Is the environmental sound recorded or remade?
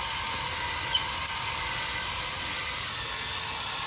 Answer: recorded